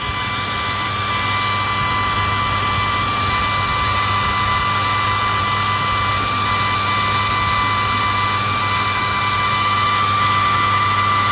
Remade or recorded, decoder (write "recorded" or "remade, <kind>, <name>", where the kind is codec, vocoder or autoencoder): recorded